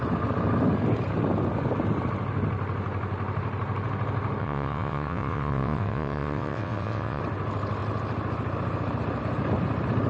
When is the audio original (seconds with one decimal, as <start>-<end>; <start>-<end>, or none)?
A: 0.0-4.4; 7.2-10.1